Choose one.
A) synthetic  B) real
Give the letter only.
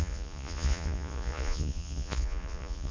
A